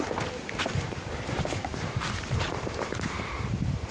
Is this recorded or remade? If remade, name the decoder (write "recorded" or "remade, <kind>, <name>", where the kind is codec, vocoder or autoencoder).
remade, vocoder, BigVGAN v2